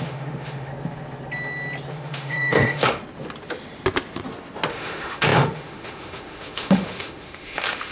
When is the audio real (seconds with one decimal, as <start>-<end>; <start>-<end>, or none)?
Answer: 0.7-1.9; 3.0-4.7